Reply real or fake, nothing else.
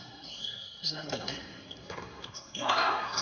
fake